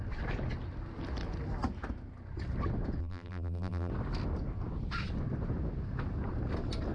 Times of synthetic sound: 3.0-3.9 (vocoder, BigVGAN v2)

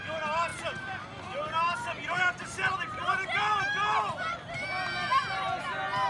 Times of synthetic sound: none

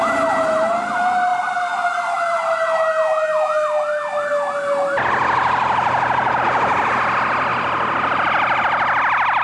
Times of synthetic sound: none